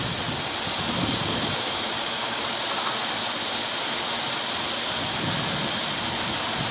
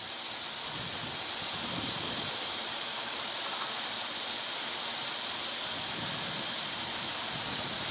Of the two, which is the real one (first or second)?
first